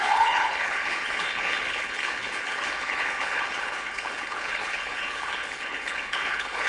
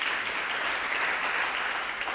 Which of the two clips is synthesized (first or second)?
first